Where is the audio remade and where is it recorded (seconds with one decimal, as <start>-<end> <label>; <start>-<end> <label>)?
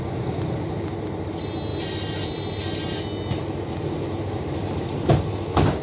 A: 0.0-5.8 recorded